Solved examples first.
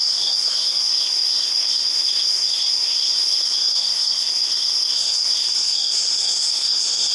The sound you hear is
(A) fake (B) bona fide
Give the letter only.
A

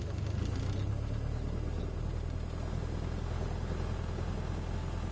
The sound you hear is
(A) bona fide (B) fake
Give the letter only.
A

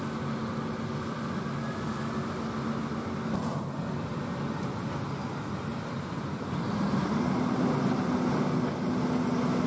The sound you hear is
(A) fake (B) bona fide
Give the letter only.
B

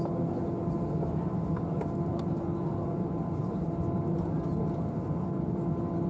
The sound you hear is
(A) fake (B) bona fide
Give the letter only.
B